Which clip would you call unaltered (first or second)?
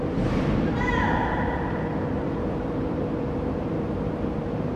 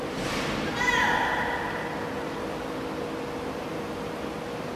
second